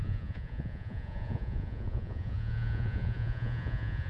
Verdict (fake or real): fake